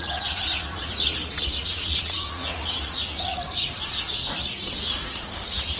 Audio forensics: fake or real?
fake